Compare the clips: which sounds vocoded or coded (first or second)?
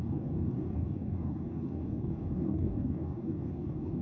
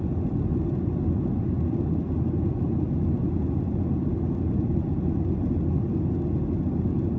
first